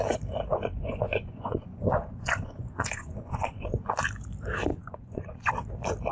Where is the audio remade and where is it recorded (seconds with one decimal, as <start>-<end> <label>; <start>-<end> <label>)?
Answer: 0.0-0.5 recorded; 0.5-3.9 remade; 3.9-4.7 recorded; 4.7-5.5 remade; 5.5-6.1 recorded